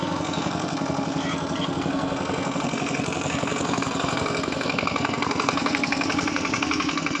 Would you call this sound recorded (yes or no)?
no